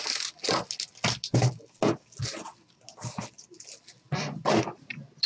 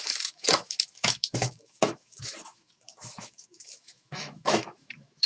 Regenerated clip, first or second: second